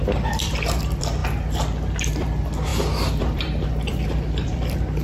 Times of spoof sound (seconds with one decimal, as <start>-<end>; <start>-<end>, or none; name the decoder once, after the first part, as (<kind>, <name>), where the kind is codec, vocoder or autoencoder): 0.0-1.2 (vocoder, BigVGAN v2); 2.1-5.0